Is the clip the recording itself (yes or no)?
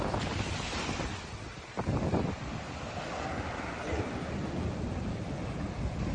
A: yes